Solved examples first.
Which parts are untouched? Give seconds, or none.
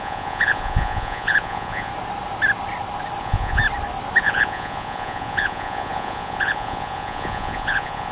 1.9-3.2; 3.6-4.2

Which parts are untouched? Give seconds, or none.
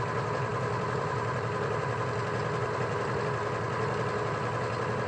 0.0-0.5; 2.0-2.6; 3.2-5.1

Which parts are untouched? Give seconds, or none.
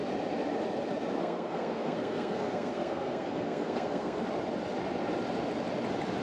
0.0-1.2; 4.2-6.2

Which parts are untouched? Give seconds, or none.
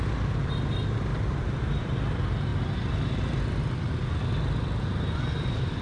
0.0-1.1; 2.1-5.8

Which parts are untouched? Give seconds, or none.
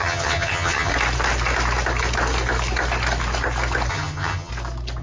0.9-3.9; 4.5-5.0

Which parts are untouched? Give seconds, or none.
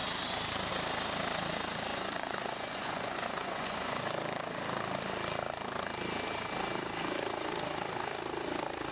0.0-1.9; 4.0-8.9